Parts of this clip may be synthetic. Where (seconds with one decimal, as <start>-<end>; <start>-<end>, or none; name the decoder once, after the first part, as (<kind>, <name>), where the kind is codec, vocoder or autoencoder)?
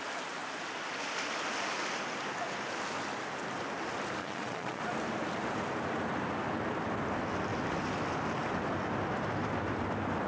4.2-4.8 (vocoder, Vocos)